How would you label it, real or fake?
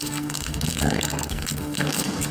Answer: fake